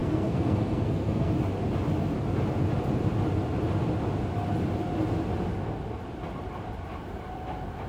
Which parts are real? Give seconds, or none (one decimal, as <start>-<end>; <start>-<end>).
1.3-7.9

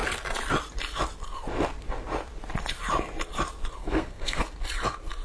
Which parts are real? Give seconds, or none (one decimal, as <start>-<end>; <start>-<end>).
0.0-3.8; 4.4-5.2

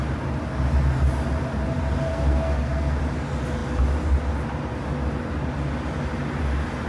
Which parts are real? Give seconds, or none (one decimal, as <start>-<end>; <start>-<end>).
0.0-2.1; 3.0-6.9

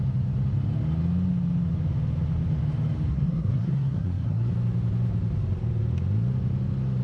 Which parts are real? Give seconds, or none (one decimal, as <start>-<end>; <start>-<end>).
0.0-3.1; 4.5-7.0

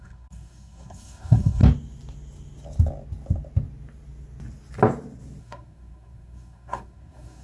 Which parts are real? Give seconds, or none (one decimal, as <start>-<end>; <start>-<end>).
1.6-5.4

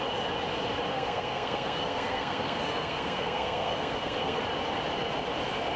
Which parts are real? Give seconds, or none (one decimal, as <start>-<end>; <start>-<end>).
0.0-0.9; 4.4-5.8

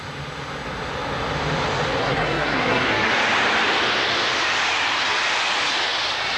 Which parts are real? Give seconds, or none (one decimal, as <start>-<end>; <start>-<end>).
0.0-2.0; 3.1-6.4

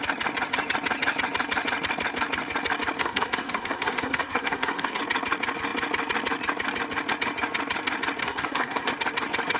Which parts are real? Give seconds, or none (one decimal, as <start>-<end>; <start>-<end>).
0.0-3.0; 5.0-8.2; 8.9-9.6